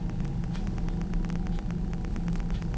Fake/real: real